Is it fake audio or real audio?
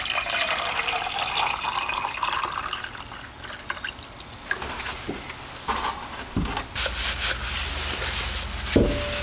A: real